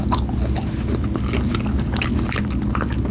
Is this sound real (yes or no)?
yes